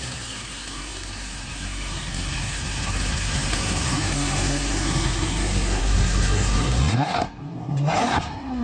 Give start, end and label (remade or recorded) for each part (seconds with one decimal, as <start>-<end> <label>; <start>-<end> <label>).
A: 0.0-8.6 remade